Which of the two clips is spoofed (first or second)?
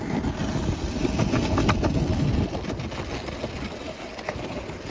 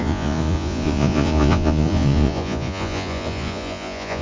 second